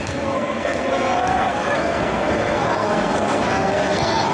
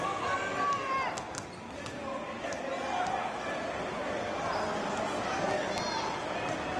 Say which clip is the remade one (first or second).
first